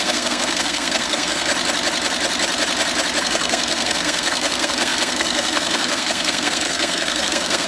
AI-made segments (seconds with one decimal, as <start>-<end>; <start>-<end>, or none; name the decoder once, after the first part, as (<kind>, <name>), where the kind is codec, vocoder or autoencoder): 0.0-1.5 (codec, SNAC); 3.2-7.7